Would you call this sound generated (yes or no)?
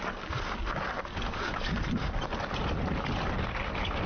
no